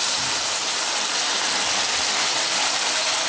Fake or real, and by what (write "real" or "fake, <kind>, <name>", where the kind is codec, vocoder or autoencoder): real